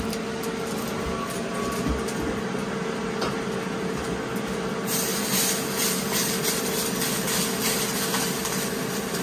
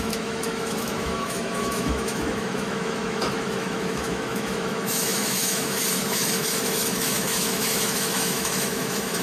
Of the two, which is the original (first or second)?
first